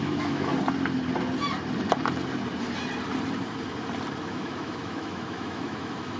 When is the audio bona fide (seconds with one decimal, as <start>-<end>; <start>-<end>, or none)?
0.5-4.2